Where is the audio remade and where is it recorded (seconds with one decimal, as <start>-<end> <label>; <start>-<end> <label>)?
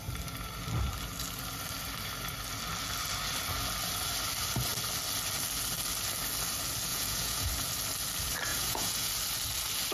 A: 0.0-6.9 recorded; 6.9-7.5 remade; 7.5-8.5 recorded; 8.5-9.1 remade; 9.1-9.9 recorded